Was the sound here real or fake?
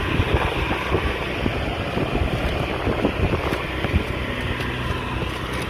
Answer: real